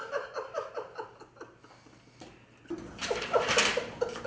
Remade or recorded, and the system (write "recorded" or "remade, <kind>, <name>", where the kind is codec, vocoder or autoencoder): recorded